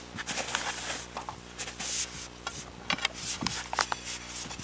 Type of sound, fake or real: real